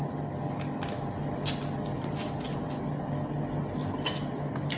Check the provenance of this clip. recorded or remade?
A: recorded